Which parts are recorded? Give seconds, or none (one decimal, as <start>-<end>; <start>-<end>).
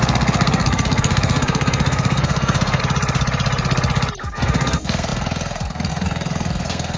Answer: 2.8-4.2